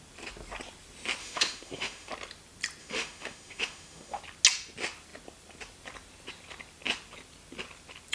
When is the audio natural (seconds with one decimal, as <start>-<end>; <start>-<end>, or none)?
0.0-1.2; 2.1-2.8; 4.2-8.1